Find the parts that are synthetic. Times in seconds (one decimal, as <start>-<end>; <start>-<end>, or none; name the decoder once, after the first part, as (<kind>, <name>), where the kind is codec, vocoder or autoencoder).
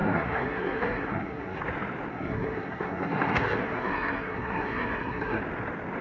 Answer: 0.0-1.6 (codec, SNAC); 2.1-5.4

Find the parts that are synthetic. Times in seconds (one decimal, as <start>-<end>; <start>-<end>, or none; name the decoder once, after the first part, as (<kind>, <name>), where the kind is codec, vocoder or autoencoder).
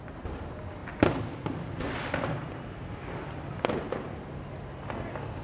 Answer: none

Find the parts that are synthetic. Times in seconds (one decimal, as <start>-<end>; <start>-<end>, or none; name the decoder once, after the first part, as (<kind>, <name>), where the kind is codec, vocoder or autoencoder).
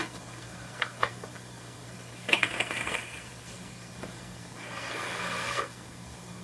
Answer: 0.0-6.4 (codec, SNAC)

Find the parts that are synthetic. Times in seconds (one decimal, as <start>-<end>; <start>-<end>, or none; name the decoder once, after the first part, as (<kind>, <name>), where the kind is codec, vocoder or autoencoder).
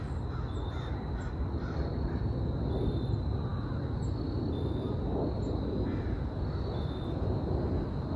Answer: none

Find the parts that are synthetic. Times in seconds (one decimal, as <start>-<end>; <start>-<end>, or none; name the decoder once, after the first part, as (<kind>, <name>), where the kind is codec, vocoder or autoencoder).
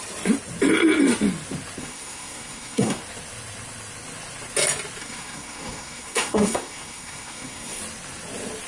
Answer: 1.8-3.0 (codec, SNAC); 5.0-7.8